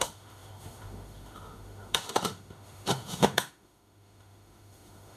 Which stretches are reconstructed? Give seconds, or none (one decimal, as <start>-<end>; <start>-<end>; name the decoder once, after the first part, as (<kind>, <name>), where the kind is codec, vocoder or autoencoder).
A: 0.0-5.2 (autoencoder, DAC-VAE)